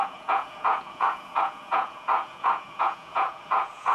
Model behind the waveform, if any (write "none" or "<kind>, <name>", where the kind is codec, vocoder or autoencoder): vocoder, Vocos